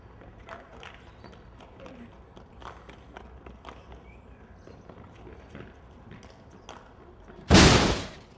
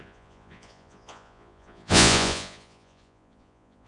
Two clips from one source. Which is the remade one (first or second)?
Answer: second